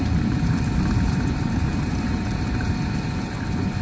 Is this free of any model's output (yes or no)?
no